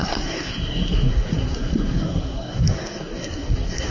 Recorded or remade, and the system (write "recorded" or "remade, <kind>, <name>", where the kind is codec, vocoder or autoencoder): remade, codec, SNAC